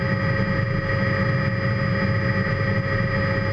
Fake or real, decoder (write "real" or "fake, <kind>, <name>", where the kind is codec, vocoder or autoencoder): real